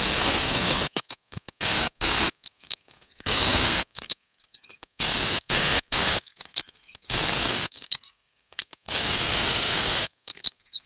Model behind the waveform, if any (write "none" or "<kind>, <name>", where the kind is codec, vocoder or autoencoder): codec, SNAC